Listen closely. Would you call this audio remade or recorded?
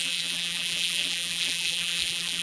remade